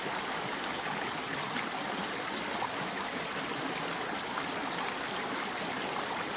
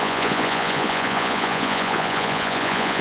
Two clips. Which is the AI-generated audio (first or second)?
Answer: second